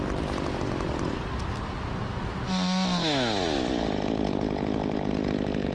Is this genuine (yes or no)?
yes